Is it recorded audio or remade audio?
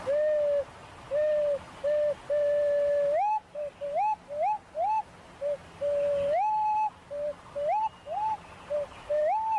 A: recorded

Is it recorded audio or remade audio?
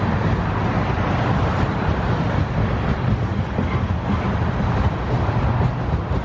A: recorded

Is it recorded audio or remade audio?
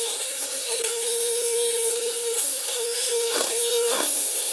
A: remade